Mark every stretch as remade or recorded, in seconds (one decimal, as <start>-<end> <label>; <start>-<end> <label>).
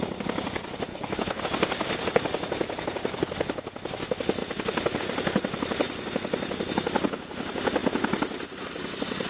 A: 0.0-0.9 recorded; 0.9-1.4 remade; 1.4-9.3 recorded